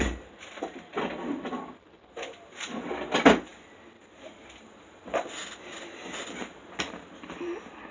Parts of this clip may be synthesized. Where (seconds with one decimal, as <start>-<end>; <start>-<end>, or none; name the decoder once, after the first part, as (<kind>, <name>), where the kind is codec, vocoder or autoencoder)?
none